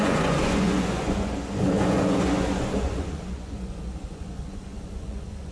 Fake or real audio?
fake